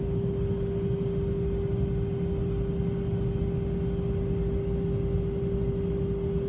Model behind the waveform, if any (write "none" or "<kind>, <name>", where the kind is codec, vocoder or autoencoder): none